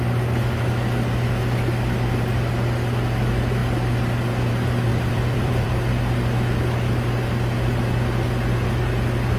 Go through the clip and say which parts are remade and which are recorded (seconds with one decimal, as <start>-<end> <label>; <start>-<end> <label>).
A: 0.0-4.9 recorded; 4.9-6.0 remade; 6.0-9.4 recorded